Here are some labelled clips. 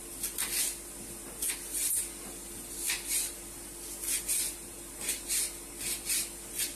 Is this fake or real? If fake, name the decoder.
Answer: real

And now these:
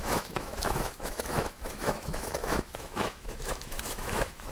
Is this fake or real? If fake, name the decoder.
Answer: fake, autoencoder, DAC-VAE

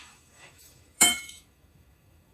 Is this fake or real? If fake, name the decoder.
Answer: fake, autoencoder, DAC-VAE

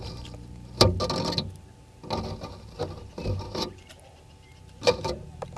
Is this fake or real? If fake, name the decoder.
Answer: real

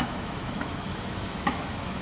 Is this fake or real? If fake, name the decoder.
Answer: fake, autoencoder, DAC-VAE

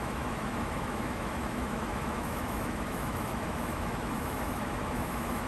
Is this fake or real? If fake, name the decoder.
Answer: fake, autoencoder, DAC-VAE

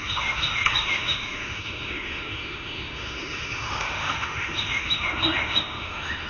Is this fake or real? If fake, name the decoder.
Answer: fake, autoencoder, DAC-VAE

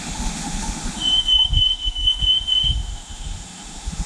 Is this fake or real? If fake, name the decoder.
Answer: fake, autoencoder, DAC-VAE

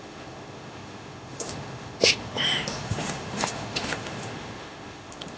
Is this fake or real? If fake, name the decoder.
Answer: fake, autoencoder, DAC-VAE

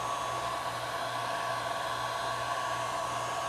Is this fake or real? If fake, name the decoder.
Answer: real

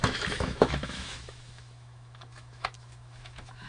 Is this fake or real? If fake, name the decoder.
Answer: fake, autoencoder, DAC-VAE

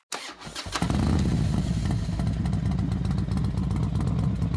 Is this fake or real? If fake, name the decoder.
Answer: real